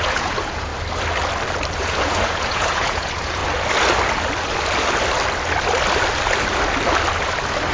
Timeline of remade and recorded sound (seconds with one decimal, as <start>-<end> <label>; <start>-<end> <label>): 0.0-0.7 remade; 0.7-1.8 recorded; 1.8-3.4 remade; 3.4-7.7 recorded